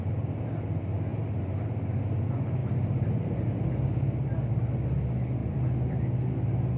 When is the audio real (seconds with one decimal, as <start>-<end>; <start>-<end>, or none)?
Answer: 0.0-5.4; 6.0-6.8